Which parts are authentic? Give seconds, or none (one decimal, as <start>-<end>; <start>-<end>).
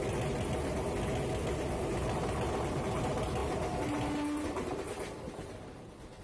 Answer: 0.0-6.2